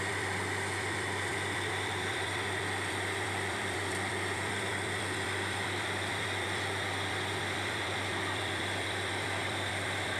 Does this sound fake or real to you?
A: fake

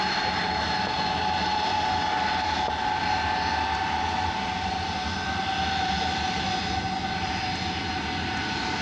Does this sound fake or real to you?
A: real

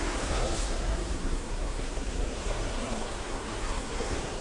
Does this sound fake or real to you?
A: fake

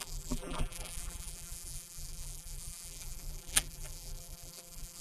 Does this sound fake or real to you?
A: fake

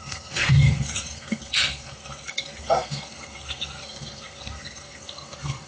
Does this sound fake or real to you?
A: fake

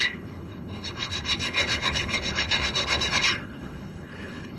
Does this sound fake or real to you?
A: fake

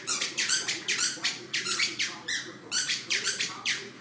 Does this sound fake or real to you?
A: fake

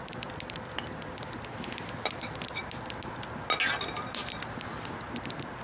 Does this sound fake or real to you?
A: real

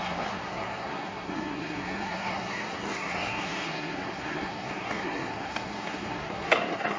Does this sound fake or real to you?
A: fake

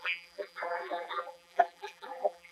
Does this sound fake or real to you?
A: fake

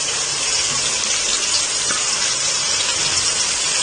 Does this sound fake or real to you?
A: real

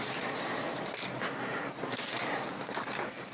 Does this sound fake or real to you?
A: real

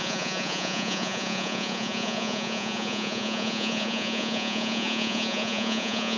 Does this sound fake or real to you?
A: fake